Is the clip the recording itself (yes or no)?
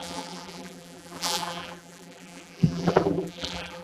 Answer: no